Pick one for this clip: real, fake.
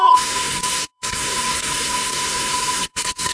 fake